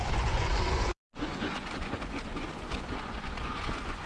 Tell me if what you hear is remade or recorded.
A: remade